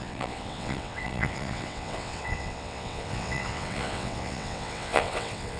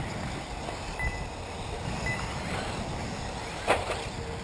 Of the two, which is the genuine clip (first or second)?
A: second